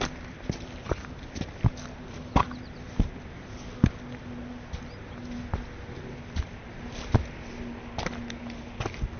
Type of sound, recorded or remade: recorded